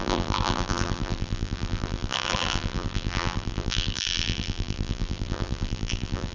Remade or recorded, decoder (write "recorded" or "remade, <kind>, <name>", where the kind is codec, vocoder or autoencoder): remade, vocoder, BigVGAN v2